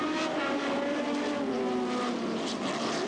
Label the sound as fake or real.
real